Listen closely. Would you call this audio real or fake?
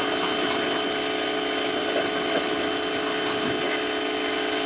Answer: real